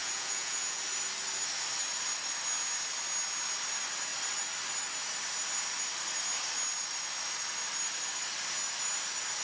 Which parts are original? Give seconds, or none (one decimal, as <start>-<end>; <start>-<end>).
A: 0.8-9.4